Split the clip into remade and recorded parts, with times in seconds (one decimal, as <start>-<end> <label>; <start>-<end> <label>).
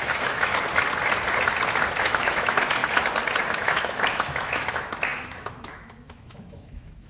0.0-0.5 remade; 0.5-2.0 recorded; 2.0-2.8 remade; 2.8-3.5 recorded; 3.5-7.1 remade